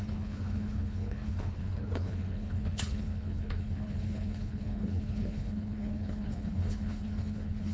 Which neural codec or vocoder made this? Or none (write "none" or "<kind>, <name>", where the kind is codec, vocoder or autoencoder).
codec, HILCodec